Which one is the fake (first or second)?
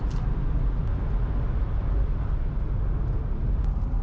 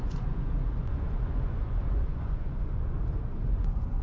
second